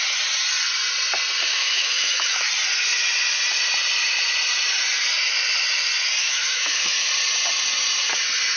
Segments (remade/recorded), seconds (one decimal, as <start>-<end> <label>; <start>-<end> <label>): 0.0-1.5 recorded; 1.5-2.5 remade; 2.5-6.2 recorded; 6.2-7.1 remade; 7.1-8.6 recorded